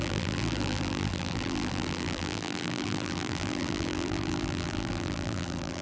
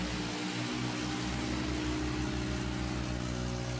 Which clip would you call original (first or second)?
second